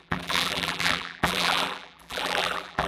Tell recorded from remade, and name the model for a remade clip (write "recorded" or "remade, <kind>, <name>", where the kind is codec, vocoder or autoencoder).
remade, vocoder, BigVGAN v2